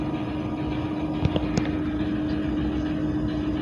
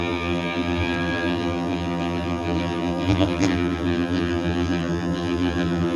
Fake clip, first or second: second